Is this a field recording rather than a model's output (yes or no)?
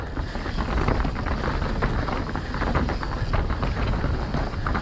yes